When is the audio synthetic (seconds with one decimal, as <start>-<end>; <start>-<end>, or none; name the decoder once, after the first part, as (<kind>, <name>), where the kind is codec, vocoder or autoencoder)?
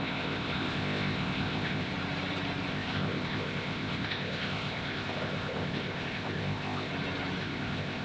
0.0-1.9 (codec, ZipCodec); 2.7-6.9; 7.4-8.0